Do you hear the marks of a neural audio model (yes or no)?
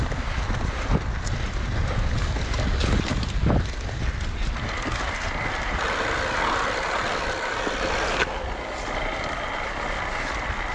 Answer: no